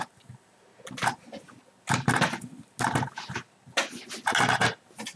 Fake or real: real